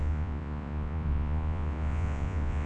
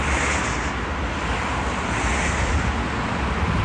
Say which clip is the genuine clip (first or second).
second